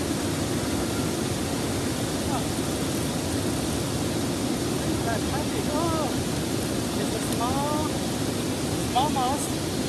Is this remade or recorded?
recorded